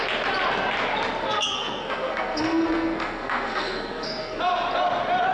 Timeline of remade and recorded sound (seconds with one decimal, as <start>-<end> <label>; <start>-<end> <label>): 0.0-1.2 recorded; 1.2-4.4 remade; 4.4-5.3 recorded